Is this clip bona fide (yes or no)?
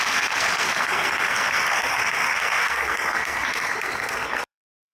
no